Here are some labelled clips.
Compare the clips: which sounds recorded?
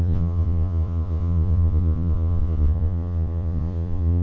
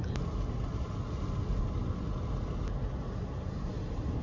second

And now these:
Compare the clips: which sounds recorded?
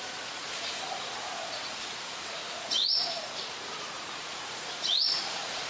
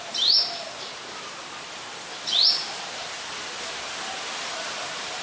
second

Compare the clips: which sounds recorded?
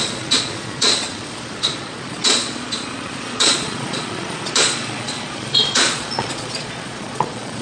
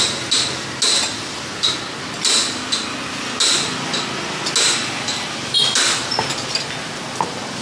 second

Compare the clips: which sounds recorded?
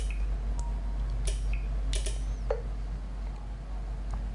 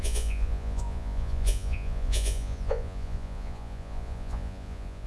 first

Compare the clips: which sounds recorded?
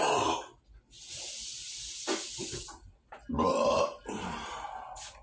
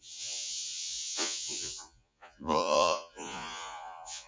first